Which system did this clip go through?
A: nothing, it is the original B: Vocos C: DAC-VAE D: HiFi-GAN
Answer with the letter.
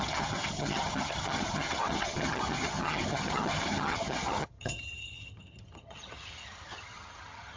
D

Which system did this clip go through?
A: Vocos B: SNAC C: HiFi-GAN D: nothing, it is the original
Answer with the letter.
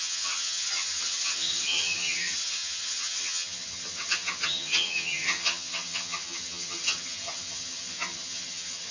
C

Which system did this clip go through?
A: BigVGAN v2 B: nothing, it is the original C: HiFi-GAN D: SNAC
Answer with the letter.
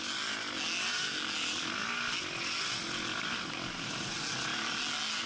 B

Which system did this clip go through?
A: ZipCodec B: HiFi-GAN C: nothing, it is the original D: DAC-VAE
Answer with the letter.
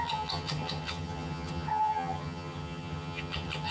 B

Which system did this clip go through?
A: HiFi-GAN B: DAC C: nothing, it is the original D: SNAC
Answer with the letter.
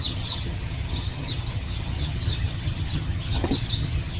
A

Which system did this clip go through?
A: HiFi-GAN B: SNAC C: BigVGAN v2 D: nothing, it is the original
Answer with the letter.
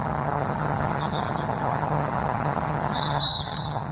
A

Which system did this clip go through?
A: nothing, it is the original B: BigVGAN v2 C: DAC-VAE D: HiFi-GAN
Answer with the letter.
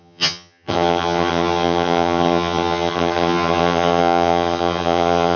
D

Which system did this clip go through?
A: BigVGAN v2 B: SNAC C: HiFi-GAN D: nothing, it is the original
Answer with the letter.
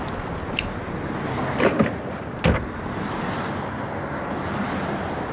D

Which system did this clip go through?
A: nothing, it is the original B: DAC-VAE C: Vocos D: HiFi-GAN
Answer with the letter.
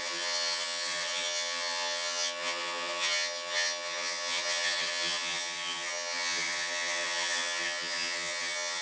D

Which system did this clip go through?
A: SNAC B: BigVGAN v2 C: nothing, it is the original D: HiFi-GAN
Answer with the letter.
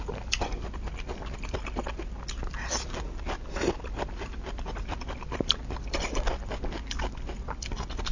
C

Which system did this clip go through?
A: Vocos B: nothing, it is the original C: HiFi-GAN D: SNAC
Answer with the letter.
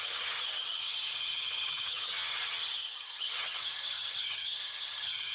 C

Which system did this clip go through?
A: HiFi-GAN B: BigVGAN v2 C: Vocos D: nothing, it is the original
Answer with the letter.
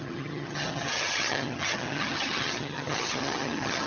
A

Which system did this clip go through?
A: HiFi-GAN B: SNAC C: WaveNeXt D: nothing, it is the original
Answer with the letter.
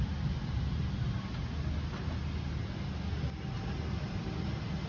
D